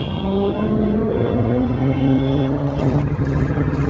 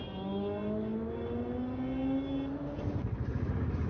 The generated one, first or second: first